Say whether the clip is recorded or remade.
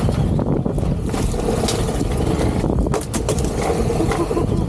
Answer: recorded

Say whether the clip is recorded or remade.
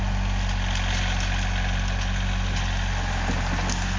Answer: recorded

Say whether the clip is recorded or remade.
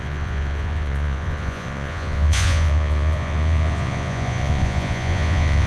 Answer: remade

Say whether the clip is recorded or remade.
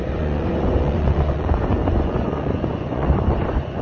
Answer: remade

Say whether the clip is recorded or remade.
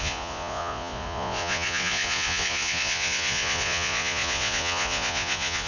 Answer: remade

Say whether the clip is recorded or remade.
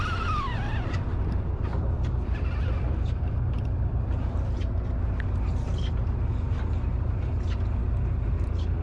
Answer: recorded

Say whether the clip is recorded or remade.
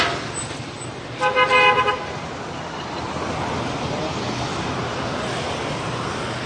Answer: recorded